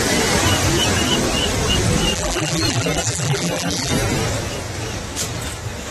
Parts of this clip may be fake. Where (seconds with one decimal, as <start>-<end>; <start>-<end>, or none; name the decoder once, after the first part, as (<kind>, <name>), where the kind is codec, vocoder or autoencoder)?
2.1-3.9 (vocoder, BigVGAN v2)